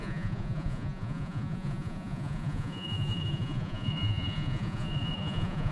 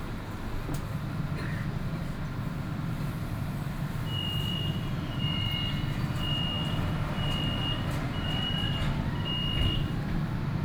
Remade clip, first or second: first